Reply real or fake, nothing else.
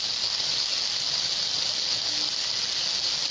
real